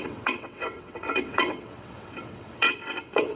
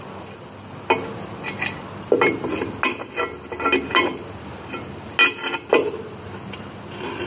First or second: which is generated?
first